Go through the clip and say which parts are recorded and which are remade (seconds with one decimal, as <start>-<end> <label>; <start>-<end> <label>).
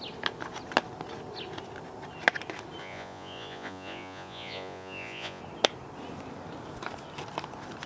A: 0.0-2.8 recorded; 2.8-5.4 remade; 5.4-7.9 recorded